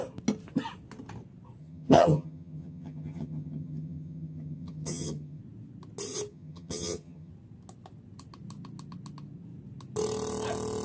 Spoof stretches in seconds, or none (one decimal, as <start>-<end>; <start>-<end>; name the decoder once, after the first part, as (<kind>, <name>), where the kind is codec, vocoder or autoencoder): 1.6-5.4 (vocoder, HiFi-GAN); 6.3-7.3